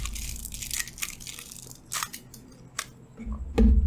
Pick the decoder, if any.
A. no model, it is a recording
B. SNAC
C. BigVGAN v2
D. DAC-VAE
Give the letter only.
A